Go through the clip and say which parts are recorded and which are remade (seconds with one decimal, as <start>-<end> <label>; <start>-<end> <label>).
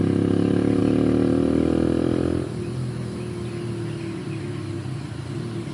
0.0-5.7 recorded